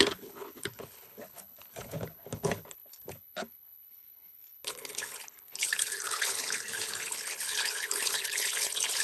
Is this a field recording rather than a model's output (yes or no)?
no